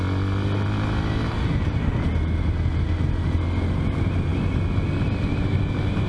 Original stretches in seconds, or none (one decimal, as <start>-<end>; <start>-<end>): 0.0-6.1